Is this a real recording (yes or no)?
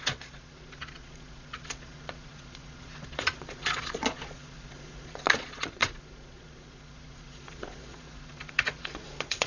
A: no